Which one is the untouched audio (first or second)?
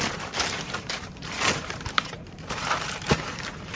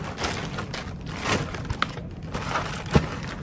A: second